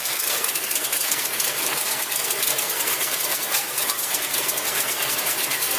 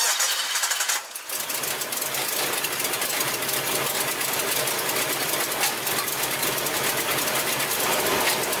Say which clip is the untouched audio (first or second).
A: second